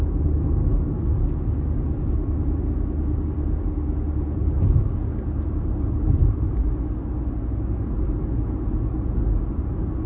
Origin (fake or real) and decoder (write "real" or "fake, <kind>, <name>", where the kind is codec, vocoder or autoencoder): real